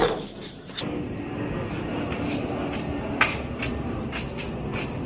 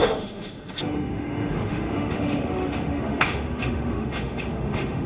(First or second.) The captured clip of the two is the first